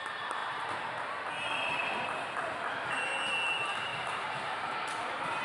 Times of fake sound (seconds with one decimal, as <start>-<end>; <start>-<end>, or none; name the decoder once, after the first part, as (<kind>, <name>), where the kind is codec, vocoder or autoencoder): 0.4-1.3 (vocoder, BigVGAN v2); 3.9-5.4